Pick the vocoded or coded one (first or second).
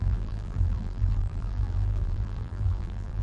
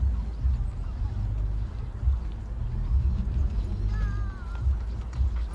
first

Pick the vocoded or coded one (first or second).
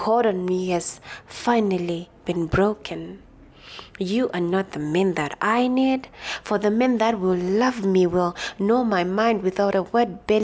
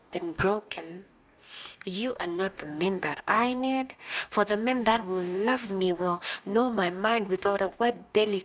second